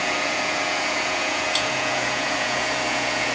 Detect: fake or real fake